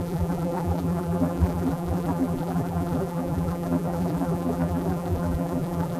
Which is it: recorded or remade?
remade